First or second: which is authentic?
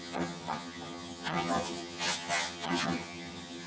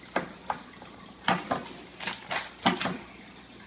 second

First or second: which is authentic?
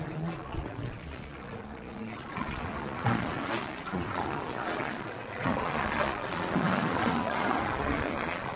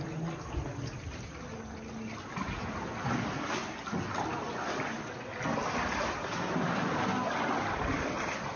second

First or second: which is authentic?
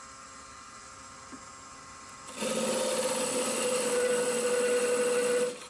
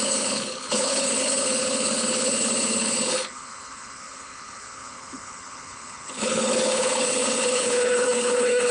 first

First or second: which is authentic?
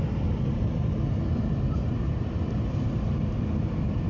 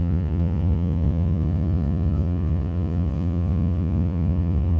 first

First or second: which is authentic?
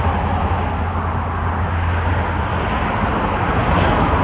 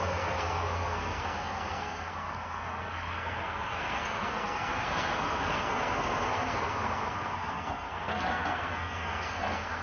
first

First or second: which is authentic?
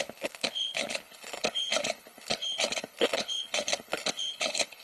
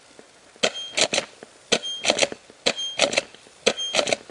second